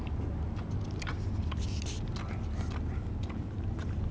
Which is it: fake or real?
real